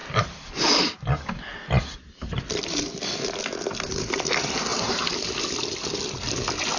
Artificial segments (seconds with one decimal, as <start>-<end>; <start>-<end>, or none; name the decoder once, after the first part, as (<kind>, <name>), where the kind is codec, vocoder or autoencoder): none